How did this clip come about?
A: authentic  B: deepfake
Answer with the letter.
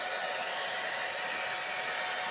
A